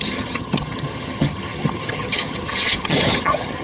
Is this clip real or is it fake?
fake